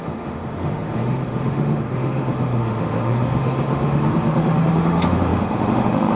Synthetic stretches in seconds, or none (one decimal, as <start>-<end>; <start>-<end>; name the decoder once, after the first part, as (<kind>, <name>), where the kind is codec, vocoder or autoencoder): 0.0-6.2 (autoencoder, DAC-VAE)